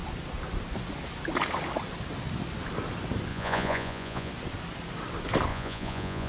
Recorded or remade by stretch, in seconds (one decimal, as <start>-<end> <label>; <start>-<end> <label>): 0.0-3.3 recorded; 3.3-4.3 remade; 4.3-5.5 recorded; 5.5-6.3 remade

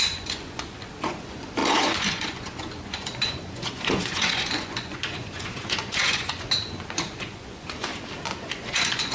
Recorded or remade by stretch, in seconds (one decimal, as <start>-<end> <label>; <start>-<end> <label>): 0.0-7.9 remade; 7.9-8.4 recorded; 8.4-9.1 remade